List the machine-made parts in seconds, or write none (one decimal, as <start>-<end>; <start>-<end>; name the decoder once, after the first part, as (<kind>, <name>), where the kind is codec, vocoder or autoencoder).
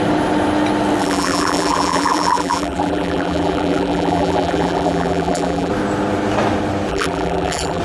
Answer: 1.0-5.7 (vocoder, BigVGAN v2); 6.9-7.8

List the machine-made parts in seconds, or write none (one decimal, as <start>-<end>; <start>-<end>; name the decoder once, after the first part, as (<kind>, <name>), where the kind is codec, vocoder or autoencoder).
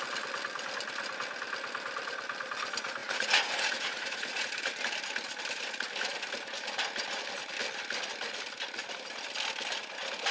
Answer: 3.0-4.7 (vocoder, Vocos)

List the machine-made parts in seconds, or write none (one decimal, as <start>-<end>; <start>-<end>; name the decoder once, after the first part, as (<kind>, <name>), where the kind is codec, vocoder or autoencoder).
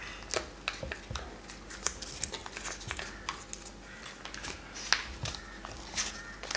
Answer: none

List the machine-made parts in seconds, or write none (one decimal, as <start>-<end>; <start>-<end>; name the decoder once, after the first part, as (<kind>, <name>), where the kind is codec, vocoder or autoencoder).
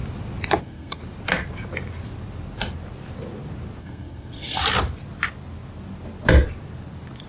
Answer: 0.6-1.0 (codec, SNAC); 3.8-4.6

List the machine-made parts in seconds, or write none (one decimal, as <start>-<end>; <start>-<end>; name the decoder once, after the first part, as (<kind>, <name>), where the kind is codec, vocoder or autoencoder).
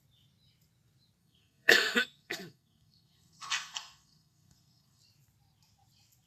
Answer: 1.2-5.0 (codec, SNAC)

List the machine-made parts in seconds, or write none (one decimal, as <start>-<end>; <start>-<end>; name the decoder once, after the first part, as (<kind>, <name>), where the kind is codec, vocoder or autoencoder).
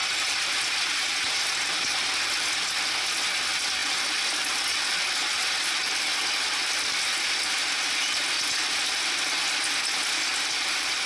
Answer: 10.3-11.1 (vocoder, BigVGAN v2)